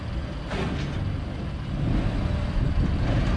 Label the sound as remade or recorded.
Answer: recorded